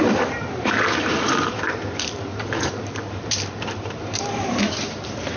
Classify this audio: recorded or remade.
remade